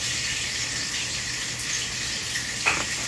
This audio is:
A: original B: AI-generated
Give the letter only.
A